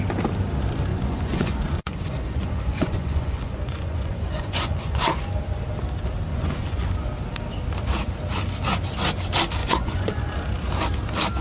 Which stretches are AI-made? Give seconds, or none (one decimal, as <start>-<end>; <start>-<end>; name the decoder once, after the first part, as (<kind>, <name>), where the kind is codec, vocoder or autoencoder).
0.9-5.2 (vocoder, Vocos); 6.3-6.9; 9.6-10.3